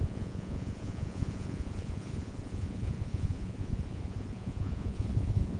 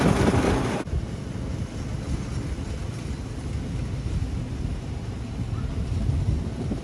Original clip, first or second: second